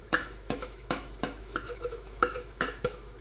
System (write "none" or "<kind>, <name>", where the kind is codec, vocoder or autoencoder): autoencoder, DAC-VAE